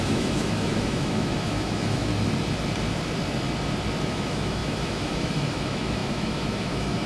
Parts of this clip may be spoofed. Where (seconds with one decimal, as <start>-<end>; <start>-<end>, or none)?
0.0-2.1; 4.0-7.1